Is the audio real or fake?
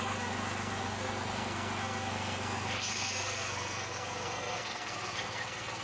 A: fake